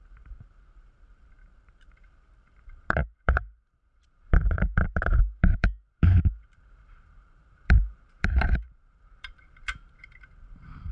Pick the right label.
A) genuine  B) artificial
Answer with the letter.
B